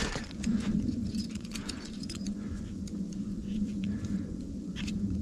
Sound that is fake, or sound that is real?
fake